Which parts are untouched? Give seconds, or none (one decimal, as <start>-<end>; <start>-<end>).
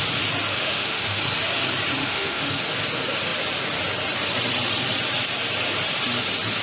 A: 0.0-0.5; 1.2-2.0; 2.5-6.6